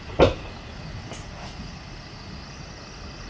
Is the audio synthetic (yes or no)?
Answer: no